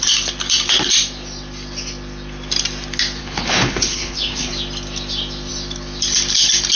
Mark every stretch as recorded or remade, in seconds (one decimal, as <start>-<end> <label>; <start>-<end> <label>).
0.0-3.2 recorded; 3.2-4.5 remade; 4.5-6.7 recorded